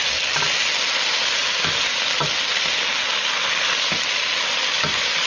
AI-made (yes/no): no